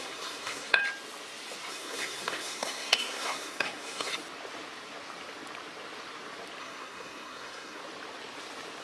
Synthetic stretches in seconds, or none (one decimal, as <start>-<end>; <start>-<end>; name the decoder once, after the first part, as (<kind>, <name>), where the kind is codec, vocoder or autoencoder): 0.0-0.8 (codec, SNAC); 1.7-4.1; 6.6-7.8